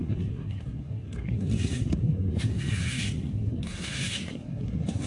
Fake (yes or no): yes